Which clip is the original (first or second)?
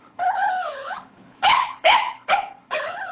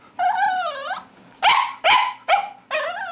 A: second